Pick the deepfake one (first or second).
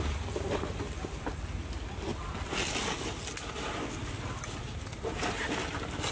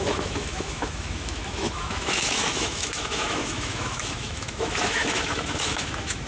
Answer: second